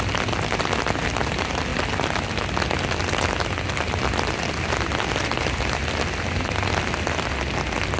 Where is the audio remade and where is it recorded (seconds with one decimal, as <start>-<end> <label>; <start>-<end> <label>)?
0.0-8.0 recorded